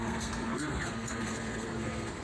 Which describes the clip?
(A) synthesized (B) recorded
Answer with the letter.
A